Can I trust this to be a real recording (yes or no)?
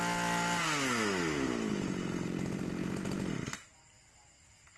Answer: yes